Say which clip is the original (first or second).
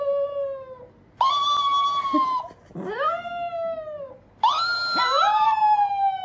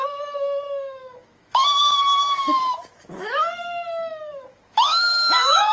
first